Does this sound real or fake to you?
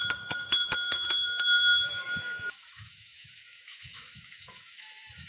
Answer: fake